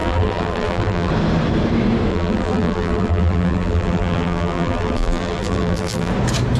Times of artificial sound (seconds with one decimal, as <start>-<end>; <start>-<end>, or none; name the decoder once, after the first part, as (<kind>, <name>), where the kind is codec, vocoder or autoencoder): 0.0-1.1 (vocoder, BigVGAN v2); 2.1-6.1